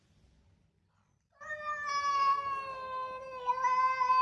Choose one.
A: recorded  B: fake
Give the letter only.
A